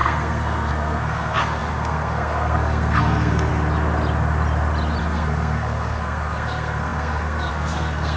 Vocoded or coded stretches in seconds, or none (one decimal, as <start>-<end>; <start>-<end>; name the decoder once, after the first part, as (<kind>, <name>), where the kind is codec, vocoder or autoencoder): 0.0-3.5 (codec, SNAC); 5.0-8.2